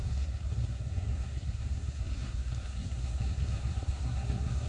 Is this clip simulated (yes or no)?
yes